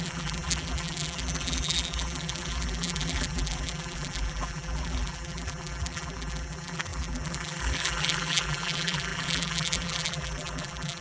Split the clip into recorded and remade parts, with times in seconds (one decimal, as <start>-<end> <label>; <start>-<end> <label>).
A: 0.0-11.0 remade